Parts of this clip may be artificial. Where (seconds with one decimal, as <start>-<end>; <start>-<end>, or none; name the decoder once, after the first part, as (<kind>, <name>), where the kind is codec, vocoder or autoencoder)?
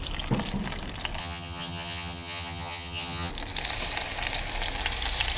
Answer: 1.2-3.3 (vocoder, HiFi-GAN)